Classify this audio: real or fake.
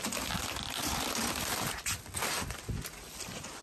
real